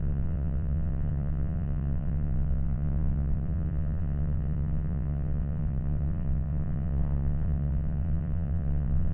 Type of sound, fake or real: fake